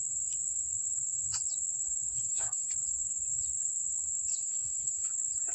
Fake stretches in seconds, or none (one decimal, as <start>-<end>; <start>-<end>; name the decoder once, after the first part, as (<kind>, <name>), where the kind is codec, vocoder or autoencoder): 2.1-2.7 (codec, HILCodec); 4.3-5.1